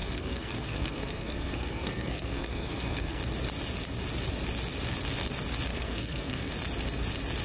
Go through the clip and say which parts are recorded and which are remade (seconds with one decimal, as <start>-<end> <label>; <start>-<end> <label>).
0.0-3.2 remade; 3.2-5.7 recorded; 5.7-6.5 remade; 6.5-7.4 recorded